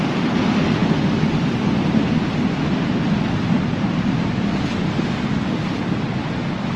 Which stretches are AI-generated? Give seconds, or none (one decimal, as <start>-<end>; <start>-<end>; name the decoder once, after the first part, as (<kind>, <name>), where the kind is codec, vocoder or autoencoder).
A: none